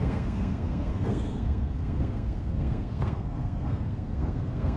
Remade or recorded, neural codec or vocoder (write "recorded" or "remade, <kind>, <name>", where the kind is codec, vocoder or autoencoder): remade, codec, SNAC